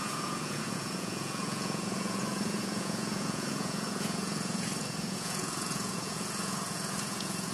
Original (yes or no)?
no